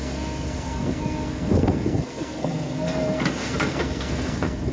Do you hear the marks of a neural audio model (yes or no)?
yes